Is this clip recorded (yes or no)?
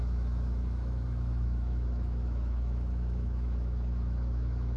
no